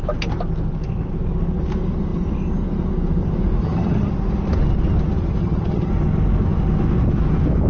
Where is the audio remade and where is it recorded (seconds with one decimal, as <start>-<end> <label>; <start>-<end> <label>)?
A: 0.0-3.6 recorded; 3.6-4.1 remade; 4.1-5.4 recorded; 5.4-5.9 remade; 5.9-7.7 recorded